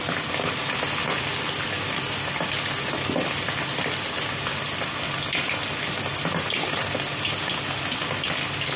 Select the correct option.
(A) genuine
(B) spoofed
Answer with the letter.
A